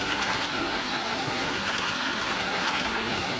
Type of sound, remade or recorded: remade